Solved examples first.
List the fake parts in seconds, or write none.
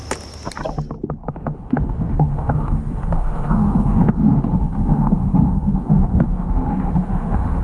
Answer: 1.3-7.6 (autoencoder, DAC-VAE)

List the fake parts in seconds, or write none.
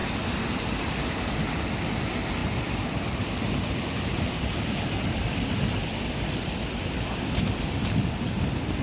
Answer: 2.4-7.6 (vocoder, BigVGAN v2)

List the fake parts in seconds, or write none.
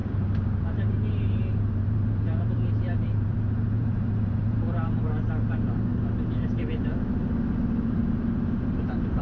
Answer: 0.0-5.0 (vocoder, BigVGAN v2)